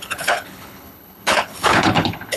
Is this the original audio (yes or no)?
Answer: no